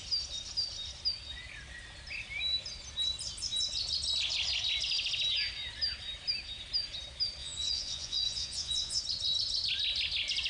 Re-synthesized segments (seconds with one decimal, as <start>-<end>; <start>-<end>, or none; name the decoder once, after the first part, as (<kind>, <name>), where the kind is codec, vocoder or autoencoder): 7.4-9.0 (vocoder, Vocos)